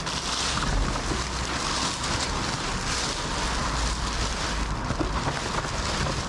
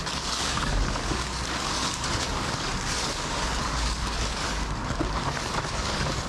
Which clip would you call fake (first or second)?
second